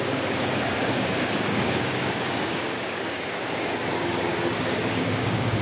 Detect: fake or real fake